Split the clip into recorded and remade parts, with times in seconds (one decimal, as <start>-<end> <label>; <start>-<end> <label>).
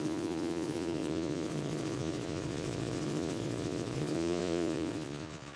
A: 0.0-5.6 remade